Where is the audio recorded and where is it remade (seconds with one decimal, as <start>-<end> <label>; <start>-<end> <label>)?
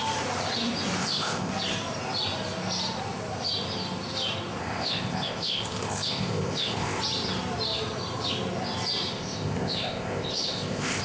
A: 0.0-1.0 recorded; 1.0-1.5 remade; 1.5-4.6 recorded; 4.6-7.0 remade; 7.0-9.1 recorded; 9.1-11.0 remade